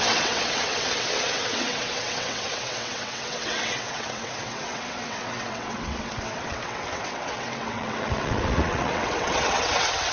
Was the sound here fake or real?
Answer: fake